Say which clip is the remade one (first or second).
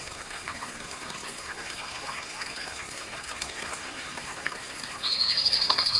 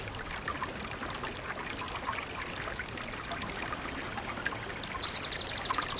first